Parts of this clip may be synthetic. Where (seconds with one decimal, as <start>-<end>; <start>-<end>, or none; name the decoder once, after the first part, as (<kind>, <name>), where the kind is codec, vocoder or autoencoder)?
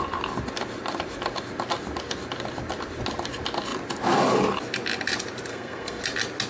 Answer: 5.5-6.0 (codec, SNAC)